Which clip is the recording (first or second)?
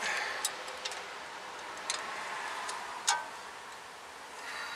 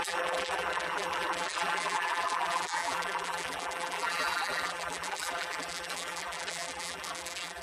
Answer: first